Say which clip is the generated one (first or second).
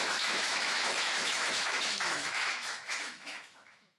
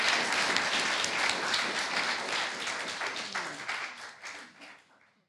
first